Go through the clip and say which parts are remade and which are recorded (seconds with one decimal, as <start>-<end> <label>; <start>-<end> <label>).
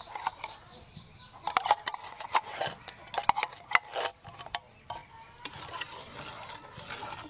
0.0-2.0 recorded; 2.0-2.6 remade; 2.6-7.3 recorded